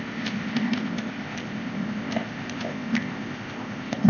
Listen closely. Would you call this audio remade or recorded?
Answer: remade